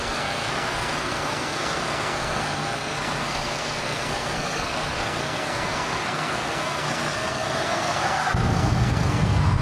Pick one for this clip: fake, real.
fake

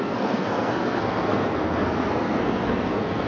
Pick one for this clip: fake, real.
fake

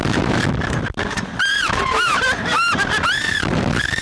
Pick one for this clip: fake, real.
fake